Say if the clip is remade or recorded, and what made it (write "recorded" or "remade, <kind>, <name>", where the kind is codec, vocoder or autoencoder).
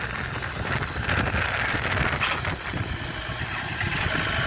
recorded